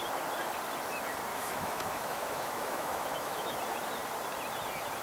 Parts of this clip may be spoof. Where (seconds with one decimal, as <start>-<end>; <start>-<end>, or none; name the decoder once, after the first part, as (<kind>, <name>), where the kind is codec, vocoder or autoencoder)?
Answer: 1.3-3.6 (autoencoder, DAC-VAE)